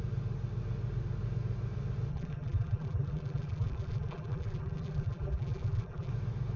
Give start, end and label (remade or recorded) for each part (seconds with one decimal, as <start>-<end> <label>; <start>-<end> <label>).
0.0-2.1 recorded; 2.1-6.1 remade; 6.1-6.6 recorded